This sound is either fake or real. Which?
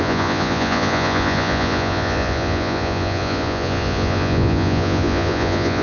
fake